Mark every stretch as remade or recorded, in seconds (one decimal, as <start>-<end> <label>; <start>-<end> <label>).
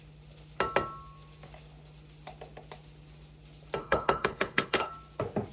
0.0-3.8 recorded; 3.8-4.9 remade; 4.9-5.5 recorded